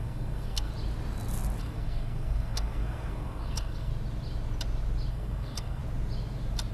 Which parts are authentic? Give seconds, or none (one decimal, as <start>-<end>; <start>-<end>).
0.7-1.6; 3.9-5.1; 5.8-6.7